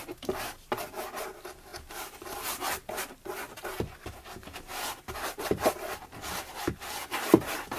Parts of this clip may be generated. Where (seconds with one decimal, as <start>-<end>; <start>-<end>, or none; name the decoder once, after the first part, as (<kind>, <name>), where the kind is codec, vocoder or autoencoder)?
none